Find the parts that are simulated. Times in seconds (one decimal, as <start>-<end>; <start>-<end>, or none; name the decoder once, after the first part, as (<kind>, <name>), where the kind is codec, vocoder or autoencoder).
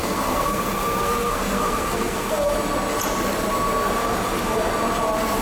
0.0-2.5 (codec, SNAC)